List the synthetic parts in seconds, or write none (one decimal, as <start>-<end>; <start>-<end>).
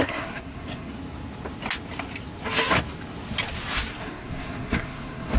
0.0-0.9; 3.9-5.4